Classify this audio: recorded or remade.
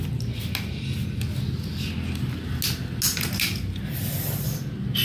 recorded